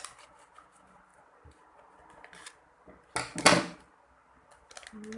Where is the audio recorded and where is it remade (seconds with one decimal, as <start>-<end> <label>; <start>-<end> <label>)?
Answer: 0.0-5.2 recorded